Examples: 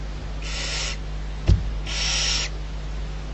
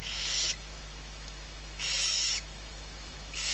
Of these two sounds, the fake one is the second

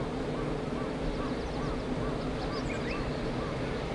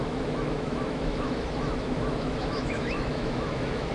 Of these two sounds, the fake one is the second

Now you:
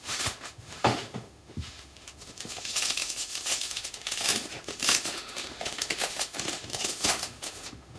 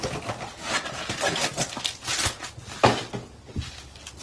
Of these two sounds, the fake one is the first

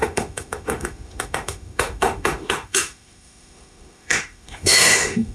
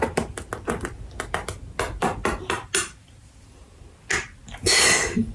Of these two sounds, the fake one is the first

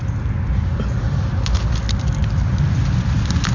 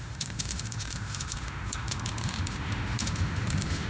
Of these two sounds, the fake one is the second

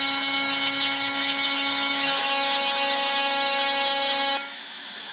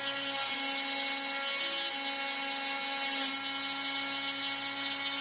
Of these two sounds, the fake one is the first